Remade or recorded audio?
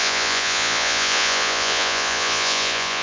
remade